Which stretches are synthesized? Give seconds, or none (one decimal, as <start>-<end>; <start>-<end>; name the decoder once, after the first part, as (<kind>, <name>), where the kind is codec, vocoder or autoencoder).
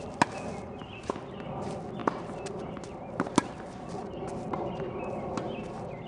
none